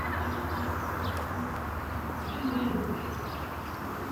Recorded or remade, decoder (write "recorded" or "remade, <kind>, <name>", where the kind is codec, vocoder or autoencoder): recorded